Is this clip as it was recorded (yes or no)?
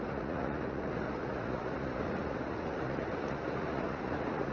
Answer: no